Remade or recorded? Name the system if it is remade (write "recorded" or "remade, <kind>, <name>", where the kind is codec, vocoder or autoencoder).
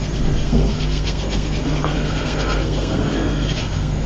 remade, codec, SNAC